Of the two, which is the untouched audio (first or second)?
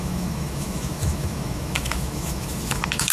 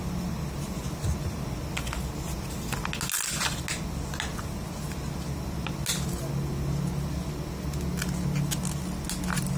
second